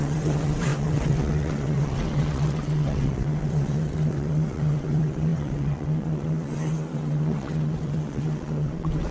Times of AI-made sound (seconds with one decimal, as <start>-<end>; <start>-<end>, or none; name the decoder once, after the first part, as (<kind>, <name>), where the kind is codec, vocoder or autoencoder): 0.0-9.1 (vocoder, WaveNeXt)